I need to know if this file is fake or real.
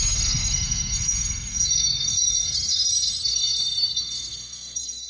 fake